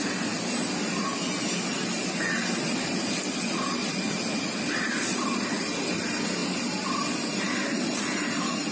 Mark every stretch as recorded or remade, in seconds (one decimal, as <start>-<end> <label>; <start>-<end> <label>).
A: 0.0-8.7 recorded